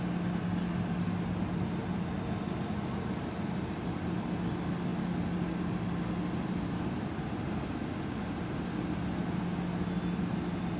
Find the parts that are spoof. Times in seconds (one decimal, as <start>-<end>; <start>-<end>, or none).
none